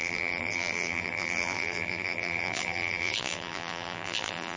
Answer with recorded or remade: remade